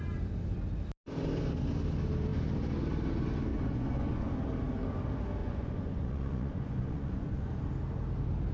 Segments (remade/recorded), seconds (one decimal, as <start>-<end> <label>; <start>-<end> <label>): 0.0-3.5 recorded; 3.5-4.3 remade; 4.3-5.4 recorded; 5.4-7.6 remade; 7.6-8.5 recorded